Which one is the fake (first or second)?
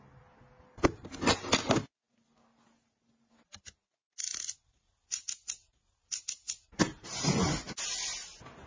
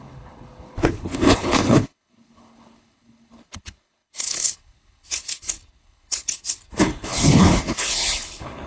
second